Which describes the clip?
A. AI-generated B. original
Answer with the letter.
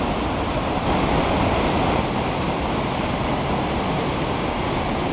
B